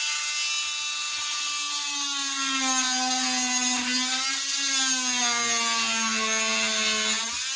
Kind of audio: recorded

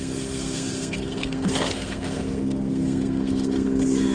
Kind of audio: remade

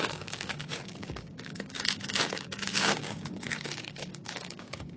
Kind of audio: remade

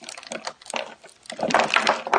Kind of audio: recorded